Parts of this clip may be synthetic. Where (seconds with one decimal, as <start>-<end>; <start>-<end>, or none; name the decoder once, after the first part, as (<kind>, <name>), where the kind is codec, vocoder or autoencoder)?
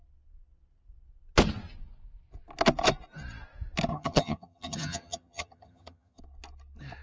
3.9-6.2 (vocoder, HiFi-GAN)